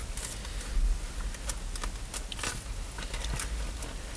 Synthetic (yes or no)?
no